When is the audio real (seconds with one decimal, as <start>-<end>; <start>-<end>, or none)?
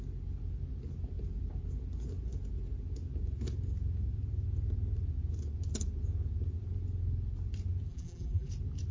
0.0-7.9; 8.5-8.9